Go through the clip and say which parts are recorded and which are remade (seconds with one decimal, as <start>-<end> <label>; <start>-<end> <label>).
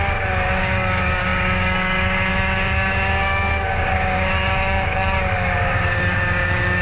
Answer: 0.0-6.8 remade